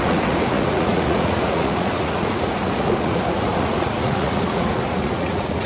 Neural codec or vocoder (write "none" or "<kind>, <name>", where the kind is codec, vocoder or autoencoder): vocoder, Vocos